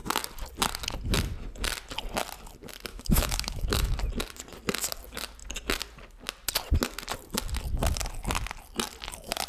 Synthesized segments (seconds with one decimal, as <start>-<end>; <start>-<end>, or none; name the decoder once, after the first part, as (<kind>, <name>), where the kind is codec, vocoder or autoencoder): 2.9-3.9 (autoencoder, DAC-VAE)